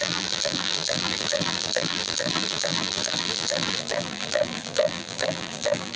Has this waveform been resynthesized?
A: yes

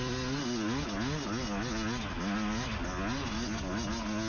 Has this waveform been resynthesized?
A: no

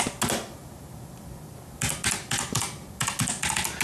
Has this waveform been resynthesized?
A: no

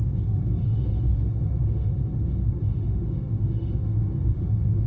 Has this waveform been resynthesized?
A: yes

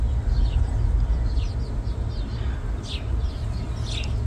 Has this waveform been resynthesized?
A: no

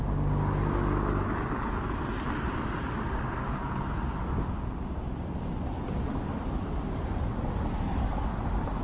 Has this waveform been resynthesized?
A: no